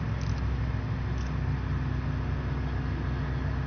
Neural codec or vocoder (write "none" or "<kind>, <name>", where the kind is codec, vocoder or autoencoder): none